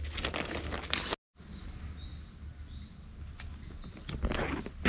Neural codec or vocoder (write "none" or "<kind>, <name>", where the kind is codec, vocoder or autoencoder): none